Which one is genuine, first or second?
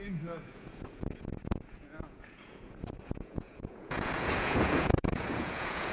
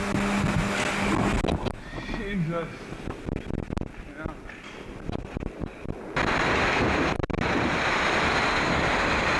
second